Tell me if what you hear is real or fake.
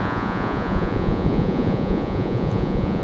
fake